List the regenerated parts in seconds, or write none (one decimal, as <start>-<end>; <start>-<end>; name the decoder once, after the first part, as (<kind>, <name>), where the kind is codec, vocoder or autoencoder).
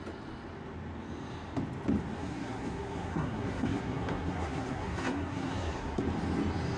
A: 2.2-6.0 (codec, SNAC)